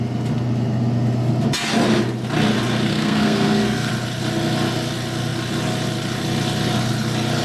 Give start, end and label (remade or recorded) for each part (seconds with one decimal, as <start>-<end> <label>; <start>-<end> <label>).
0.0-2.9 recorded; 2.9-3.9 remade; 3.9-7.4 recorded